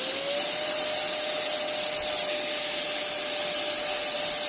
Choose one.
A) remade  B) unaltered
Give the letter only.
B